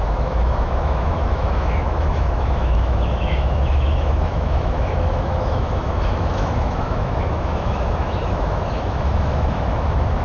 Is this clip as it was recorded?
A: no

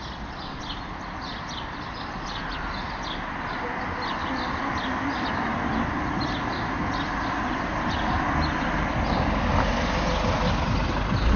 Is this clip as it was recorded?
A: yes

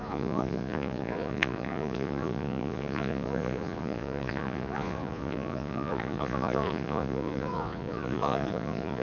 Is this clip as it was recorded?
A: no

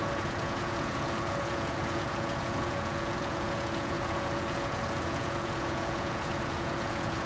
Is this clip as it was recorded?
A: no